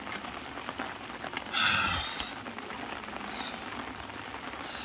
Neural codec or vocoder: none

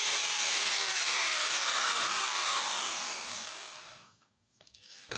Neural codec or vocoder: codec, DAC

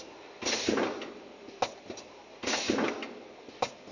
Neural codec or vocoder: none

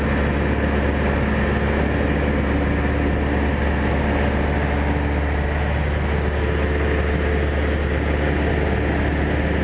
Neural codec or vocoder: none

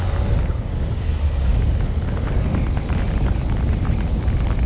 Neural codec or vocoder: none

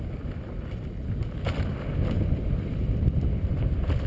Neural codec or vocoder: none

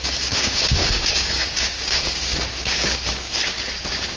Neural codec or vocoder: codec, DAC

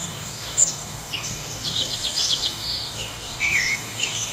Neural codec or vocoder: codec, DAC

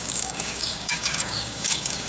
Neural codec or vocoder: codec, DAC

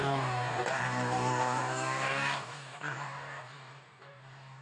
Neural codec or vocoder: codec, DAC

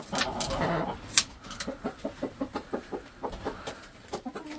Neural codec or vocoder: none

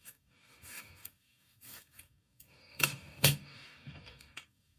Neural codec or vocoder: codec, DAC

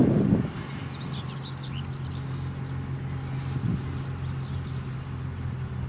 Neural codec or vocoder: none